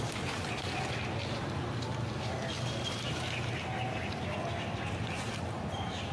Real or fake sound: real